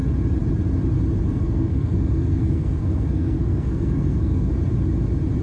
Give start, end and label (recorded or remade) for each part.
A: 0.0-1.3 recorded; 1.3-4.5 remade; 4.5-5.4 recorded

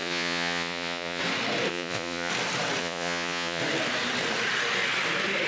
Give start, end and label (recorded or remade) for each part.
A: 0.0-1.2 remade; 1.2-1.7 recorded; 1.7-2.3 remade; 2.3-2.8 recorded; 2.8-3.6 remade; 3.6-5.5 recorded

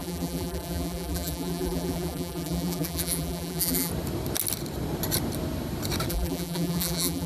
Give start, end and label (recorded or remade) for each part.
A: 0.0-3.9 remade; 3.9-6.1 recorded; 6.1-7.3 remade

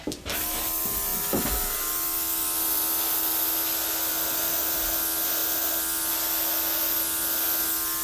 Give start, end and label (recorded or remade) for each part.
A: 0.0-8.0 recorded